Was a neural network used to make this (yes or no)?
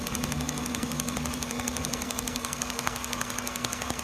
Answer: yes